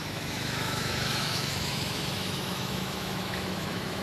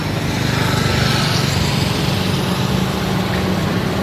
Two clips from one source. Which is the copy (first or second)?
first